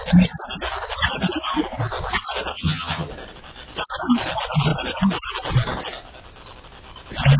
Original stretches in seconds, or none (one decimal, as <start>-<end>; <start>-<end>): 0.0-2.5; 3.1-7.4

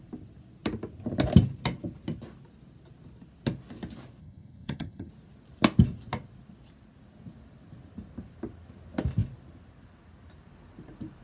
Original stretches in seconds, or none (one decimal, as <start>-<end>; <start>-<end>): 0.0-4.2; 5.1-11.2

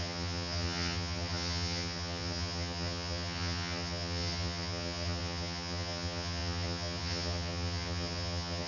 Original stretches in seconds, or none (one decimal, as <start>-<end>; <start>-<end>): none

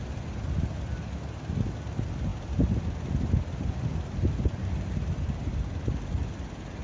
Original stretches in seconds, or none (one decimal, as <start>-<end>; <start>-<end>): 0.0-6.8

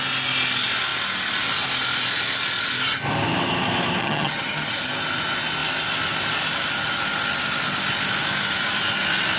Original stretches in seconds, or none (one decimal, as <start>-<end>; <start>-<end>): 0.0-4.0; 4.8-9.4

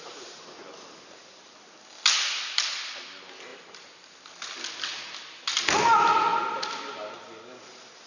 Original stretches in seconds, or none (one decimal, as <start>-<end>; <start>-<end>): 0.0-8.1

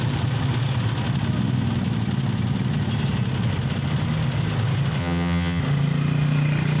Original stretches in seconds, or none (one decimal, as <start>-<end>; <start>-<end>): 0.0-5.0; 5.6-6.8

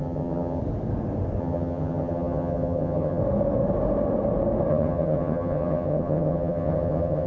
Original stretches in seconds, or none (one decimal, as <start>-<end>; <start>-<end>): 0.6-1.4; 3.2-4.7